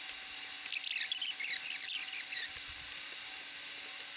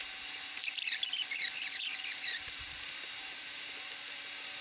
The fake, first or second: second